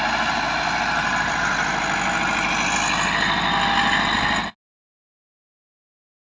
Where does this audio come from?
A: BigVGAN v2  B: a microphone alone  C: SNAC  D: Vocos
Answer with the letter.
B